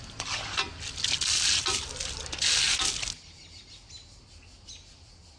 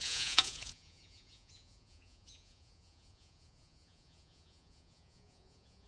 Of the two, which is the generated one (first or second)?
second